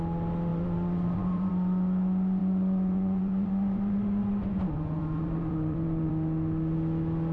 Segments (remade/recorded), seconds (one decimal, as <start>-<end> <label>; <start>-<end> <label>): 0.0-0.5 recorded; 0.5-1.5 remade; 1.5-2.4 recorded; 2.4-6.1 remade; 6.1-7.3 recorded